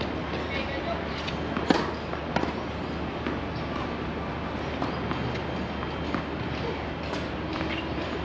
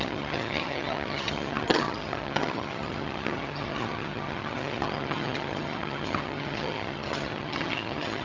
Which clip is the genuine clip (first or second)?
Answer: first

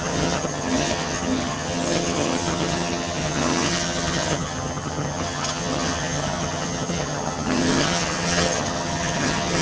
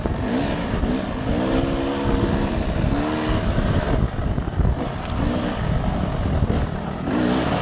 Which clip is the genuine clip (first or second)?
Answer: second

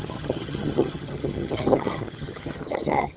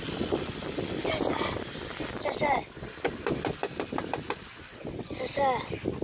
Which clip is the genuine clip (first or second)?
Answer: second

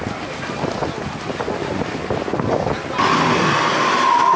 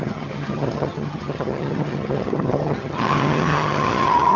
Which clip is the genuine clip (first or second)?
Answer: first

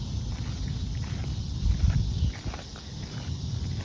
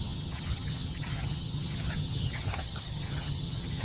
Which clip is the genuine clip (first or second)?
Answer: first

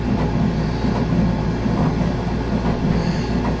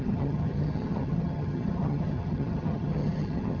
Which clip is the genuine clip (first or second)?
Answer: first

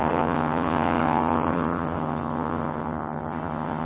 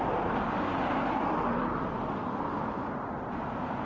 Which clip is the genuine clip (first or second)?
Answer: second